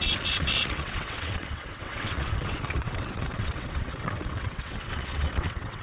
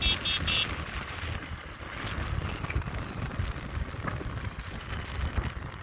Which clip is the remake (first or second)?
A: first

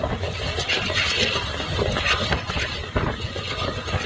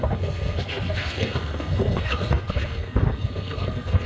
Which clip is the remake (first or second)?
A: second